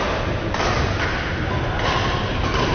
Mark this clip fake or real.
real